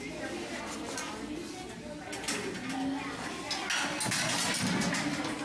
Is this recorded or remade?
recorded